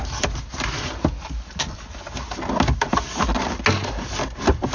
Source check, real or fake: real